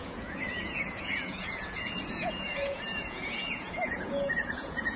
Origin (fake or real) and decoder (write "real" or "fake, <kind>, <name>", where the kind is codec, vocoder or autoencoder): fake, vocoder, Vocos